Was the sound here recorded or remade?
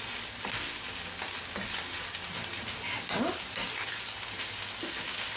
recorded